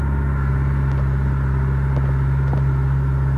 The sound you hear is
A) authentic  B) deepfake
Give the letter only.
A